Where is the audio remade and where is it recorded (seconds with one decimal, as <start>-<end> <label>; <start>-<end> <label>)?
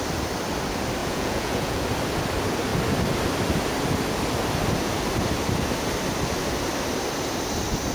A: 0.0-1.0 recorded; 1.0-1.8 remade; 1.8-7.9 recorded